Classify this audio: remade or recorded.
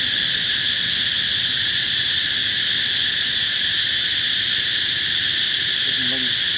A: recorded